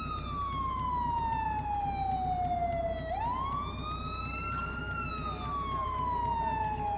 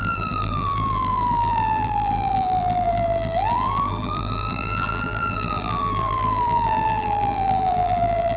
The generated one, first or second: second